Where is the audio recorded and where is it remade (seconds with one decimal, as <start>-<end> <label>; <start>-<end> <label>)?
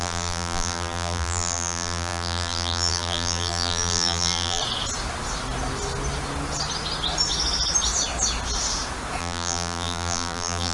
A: 0.0-4.6 remade; 4.6-9.2 recorded; 9.2-10.7 remade